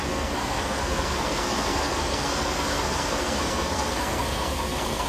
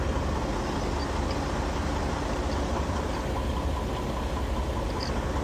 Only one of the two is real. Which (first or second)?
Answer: second